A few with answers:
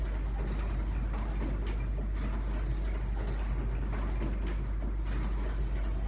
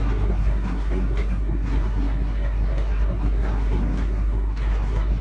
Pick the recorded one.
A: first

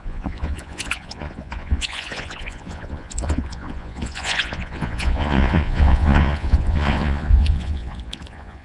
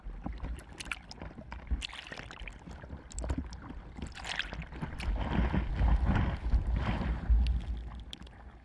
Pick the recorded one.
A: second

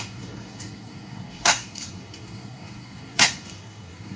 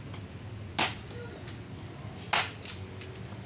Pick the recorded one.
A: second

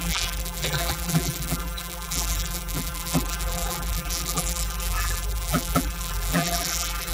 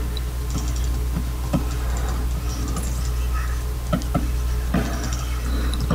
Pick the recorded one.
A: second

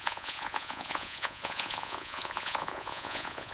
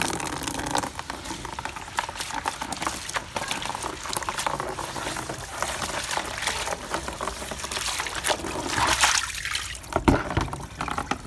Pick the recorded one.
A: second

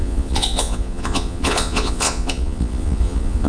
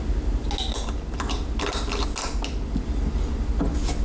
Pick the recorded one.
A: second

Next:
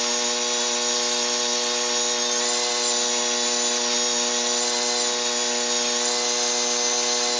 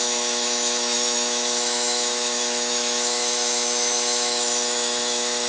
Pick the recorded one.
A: first